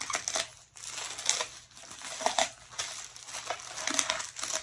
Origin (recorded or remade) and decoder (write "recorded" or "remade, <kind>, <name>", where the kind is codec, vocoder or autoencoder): recorded